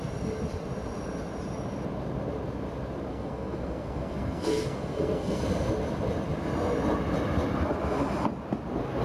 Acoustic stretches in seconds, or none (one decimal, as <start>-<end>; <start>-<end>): 0.0-3.1; 5.4-9.0